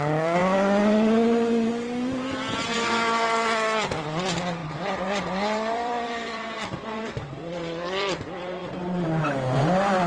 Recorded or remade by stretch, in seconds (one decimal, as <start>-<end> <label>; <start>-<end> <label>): 0.0-0.4 recorded; 0.4-1.7 remade; 1.7-4.6 recorded; 4.6-8.2 remade; 8.2-8.6 recorded; 8.6-9.2 remade; 9.2-10.1 recorded

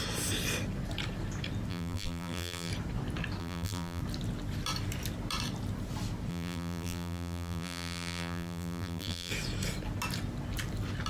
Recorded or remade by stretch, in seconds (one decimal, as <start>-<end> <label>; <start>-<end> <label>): 0.0-1.7 recorded; 1.7-2.7 remade; 2.7-3.4 recorded; 3.4-4.0 remade; 4.0-6.3 recorded; 6.3-9.3 remade; 9.3-11.1 recorded

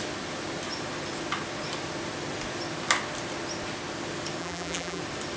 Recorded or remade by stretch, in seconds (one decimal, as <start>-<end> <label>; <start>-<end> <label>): 0.0-4.4 recorded; 4.4-5.0 remade; 5.0-5.4 recorded